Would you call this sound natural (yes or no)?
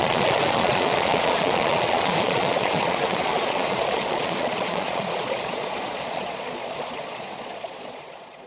no